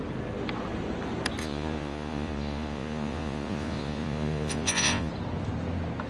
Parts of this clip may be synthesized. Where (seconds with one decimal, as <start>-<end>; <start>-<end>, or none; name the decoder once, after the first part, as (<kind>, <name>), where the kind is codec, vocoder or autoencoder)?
1.4-5.1 (vocoder, Vocos)

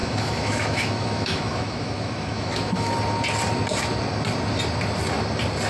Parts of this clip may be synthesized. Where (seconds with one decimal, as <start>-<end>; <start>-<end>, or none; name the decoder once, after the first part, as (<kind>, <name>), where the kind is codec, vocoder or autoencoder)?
0.0-2.9 (autoencoder, DAC-VAE)

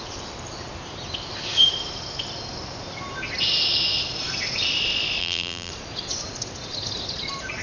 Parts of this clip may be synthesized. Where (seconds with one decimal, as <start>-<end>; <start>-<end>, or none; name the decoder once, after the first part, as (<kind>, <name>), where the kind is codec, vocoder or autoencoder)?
5.2-5.7 (vocoder, BigVGAN v2)

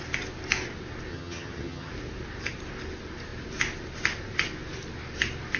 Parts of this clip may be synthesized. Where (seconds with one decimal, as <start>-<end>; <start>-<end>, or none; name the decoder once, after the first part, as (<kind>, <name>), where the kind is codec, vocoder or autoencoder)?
1.1-1.9 (vocoder, HiFi-GAN)

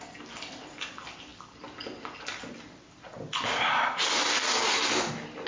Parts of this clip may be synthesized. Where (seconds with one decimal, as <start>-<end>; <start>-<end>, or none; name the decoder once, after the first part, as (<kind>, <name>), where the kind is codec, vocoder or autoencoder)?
none

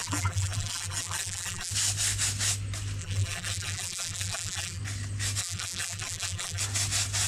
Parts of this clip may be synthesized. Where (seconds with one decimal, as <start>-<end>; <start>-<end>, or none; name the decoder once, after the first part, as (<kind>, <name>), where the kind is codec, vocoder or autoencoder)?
0.0-1.7 (vocoder, BigVGAN v2); 3.0-4.8; 5.4-6.6

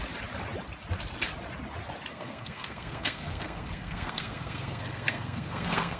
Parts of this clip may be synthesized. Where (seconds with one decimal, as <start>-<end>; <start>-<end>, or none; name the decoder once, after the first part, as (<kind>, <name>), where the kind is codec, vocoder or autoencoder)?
2.1-6.0 (codec, SNAC)